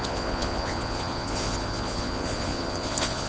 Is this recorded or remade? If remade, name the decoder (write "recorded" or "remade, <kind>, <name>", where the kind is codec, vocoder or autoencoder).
remade, vocoder, Vocos